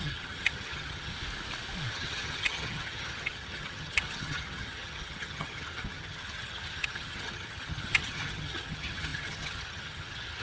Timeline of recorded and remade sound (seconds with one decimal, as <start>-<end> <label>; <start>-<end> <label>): 0.0-1.1 remade; 1.1-1.9 recorded; 1.9-10.4 remade